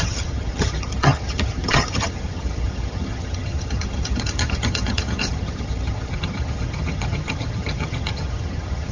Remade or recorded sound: remade